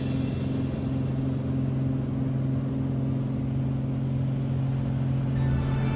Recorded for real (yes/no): yes